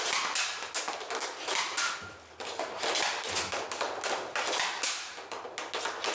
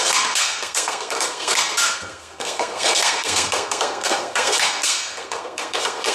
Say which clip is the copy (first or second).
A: second